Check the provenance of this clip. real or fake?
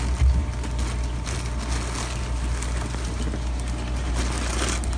real